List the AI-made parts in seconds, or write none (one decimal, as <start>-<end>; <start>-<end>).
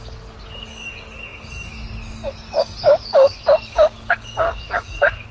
0.0-5.3